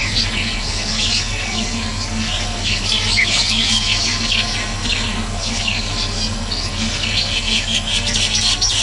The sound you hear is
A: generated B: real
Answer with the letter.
A